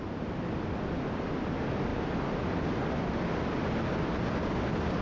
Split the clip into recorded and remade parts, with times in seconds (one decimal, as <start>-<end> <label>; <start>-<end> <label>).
0.0-5.0 recorded